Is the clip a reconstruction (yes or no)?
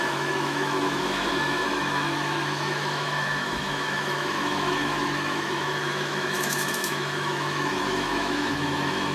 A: yes